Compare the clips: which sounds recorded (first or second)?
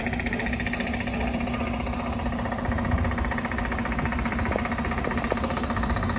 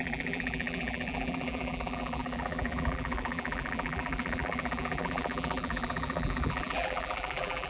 first